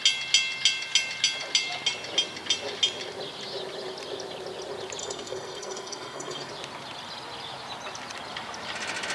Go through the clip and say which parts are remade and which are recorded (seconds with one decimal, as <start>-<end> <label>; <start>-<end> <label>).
0.0-5.0 recorded; 5.0-6.5 remade; 6.5-9.1 recorded